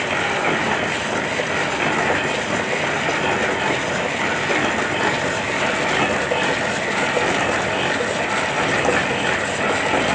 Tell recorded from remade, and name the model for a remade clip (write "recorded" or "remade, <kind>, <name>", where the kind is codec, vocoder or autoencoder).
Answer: recorded